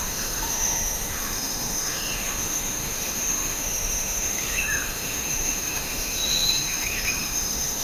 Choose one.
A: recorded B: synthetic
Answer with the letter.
B